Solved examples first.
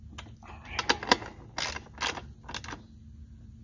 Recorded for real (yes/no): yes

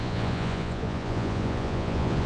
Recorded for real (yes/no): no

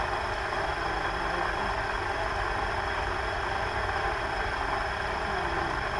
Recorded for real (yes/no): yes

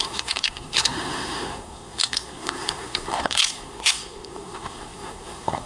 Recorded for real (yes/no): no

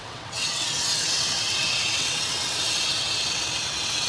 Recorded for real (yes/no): no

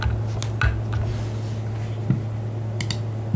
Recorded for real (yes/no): yes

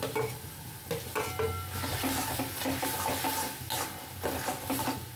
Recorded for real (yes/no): yes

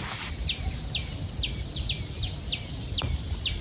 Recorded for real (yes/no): yes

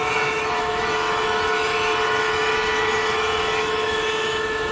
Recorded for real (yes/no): no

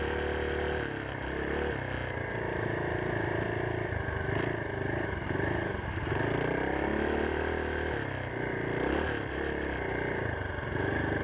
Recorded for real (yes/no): yes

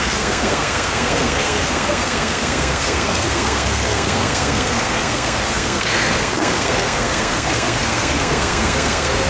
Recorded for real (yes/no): no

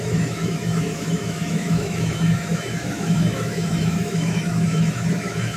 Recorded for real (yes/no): no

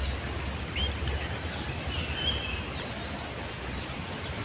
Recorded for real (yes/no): yes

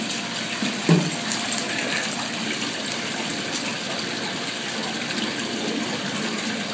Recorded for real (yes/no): yes